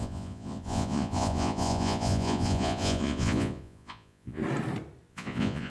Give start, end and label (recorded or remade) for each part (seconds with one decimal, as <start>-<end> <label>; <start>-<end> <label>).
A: 0.0-4.4 remade; 4.4-5.1 recorded; 5.1-5.7 remade